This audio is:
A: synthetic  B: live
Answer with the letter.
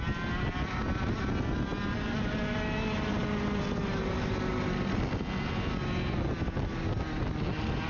B